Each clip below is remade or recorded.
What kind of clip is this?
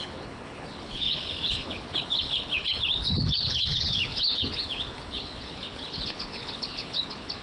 remade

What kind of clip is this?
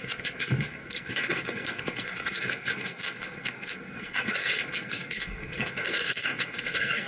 remade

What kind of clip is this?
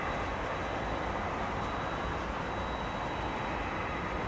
recorded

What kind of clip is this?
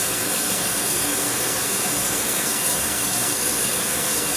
remade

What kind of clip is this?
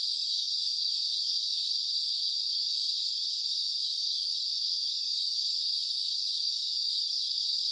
remade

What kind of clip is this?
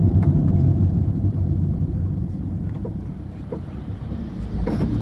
remade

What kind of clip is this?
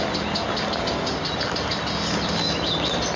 recorded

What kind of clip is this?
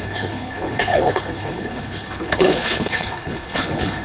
remade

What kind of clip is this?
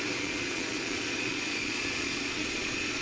remade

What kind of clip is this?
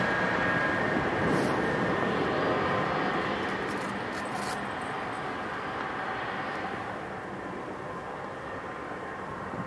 recorded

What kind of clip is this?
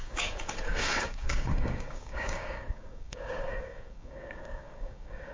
remade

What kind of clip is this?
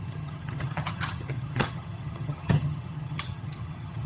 remade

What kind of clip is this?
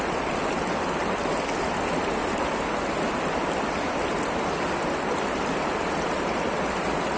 recorded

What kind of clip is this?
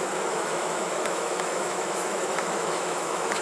remade